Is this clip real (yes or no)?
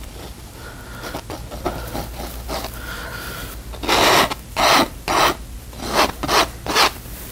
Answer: yes